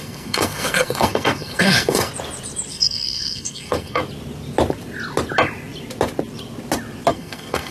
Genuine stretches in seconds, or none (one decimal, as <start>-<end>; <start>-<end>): 2.1-2.7; 4.0-7.1